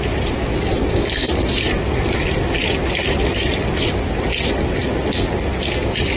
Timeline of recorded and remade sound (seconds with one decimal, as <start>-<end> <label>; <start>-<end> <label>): 0.0-6.2 recorded